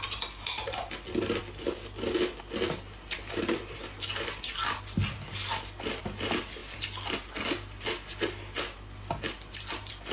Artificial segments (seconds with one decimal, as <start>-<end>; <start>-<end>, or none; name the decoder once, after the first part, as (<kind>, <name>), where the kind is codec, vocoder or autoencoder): none